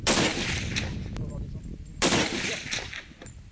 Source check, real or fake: fake